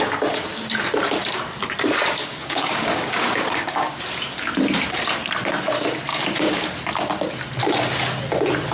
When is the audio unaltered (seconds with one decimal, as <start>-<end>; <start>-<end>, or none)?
0.0-2.2; 4.0-6.1; 6.7-8.7